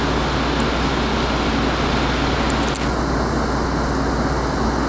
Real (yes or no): yes